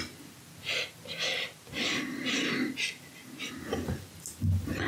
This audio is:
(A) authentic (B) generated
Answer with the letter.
A